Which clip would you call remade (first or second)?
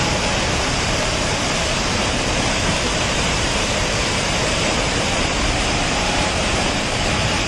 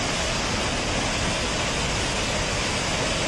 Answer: first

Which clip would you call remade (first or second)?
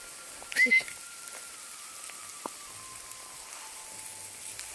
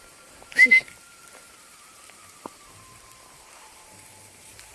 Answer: second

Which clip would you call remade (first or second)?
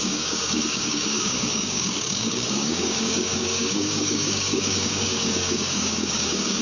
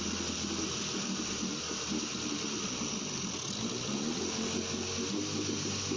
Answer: first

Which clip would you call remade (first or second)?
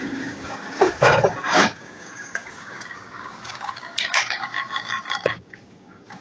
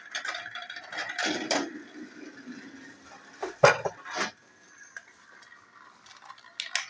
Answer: first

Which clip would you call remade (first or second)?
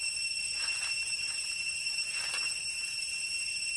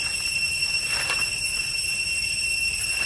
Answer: first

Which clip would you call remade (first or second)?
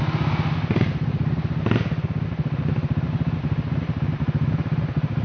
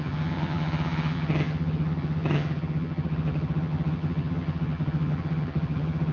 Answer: second